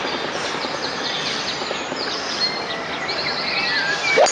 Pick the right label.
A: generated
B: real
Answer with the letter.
B